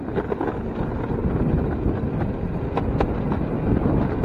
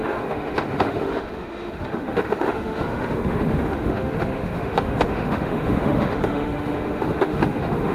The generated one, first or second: second